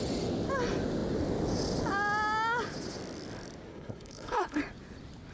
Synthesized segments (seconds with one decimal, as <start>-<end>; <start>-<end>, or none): 3.7-4.6